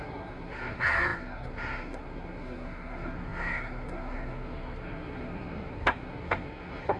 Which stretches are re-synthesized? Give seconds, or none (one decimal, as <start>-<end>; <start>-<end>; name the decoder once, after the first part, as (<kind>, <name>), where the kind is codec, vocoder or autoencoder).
0.0-7.0 (codec, SNAC)